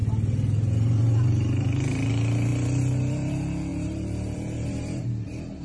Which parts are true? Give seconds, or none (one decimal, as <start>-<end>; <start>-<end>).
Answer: 2.1-3.7; 5.0-5.6